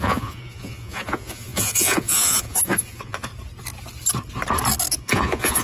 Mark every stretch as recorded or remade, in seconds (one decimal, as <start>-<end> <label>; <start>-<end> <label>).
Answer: 0.0-3.3 remade; 3.3-5.0 recorded; 5.0-5.6 remade